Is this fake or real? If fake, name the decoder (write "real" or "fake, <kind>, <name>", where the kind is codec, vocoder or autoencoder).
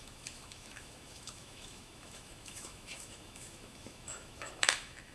fake, autoencoder, DAC-VAE